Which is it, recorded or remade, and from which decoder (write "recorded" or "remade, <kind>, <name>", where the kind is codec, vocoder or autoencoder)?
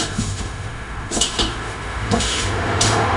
remade, autoencoder, DAC-VAE